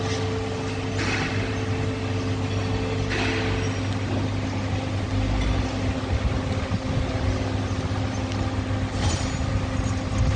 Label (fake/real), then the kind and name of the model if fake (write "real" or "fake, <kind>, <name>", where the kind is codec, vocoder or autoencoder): real